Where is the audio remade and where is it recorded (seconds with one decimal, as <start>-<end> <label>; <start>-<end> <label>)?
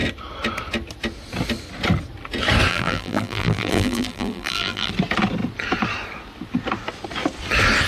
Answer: 0.0-2.7 recorded; 2.7-4.9 remade; 4.9-7.9 recorded